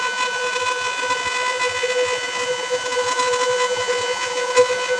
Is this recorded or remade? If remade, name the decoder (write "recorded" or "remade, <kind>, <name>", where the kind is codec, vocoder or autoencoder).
remade, vocoder, Vocos